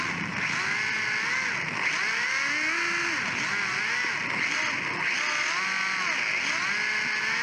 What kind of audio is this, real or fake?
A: real